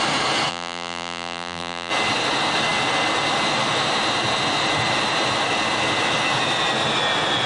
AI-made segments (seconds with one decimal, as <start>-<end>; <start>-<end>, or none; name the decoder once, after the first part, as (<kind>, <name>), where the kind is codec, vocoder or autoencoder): 0.5-1.9 (vocoder, BigVGAN v2)